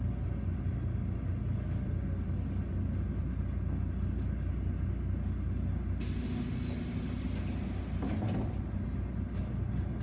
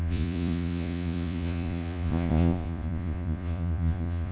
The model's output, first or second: second